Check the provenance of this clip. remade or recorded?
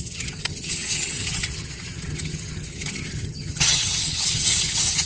remade